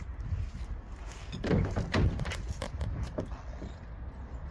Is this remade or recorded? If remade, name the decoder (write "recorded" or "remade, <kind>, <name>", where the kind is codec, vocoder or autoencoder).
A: recorded